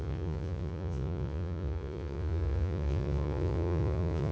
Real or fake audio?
fake